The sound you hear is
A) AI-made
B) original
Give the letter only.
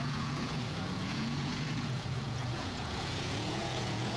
A